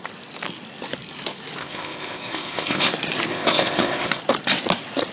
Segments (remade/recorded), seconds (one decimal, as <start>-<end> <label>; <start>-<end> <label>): 0.0-1.6 recorded; 1.6-2.9 remade; 2.9-3.3 recorded; 3.3-4.2 remade; 4.2-5.1 recorded